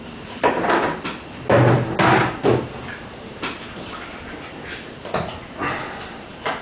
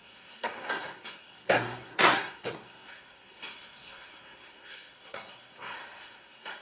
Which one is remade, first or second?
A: second